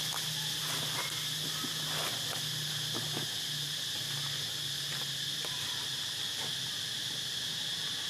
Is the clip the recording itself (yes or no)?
yes